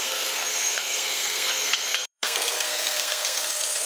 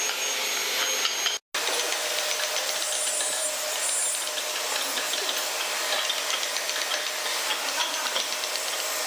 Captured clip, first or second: second